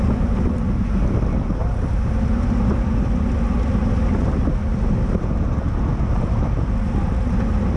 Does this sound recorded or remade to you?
recorded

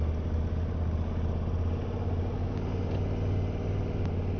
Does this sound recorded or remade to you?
recorded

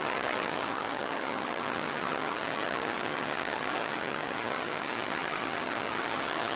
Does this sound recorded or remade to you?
remade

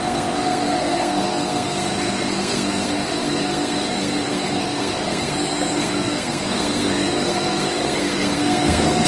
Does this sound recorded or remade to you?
remade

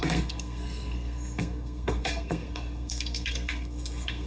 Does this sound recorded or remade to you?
remade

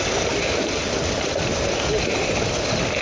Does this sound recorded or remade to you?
recorded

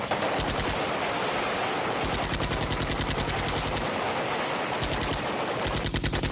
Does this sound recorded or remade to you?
recorded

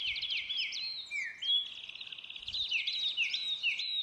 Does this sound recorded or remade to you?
recorded